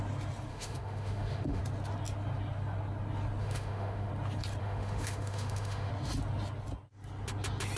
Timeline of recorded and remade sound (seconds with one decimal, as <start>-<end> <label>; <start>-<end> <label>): 0.0-0.5 recorded; 0.5-1.6 remade; 1.6-3.4 recorded; 3.4-4.1 remade; 4.1-4.6 recorded; 4.6-5.9 remade; 5.9-7.8 recorded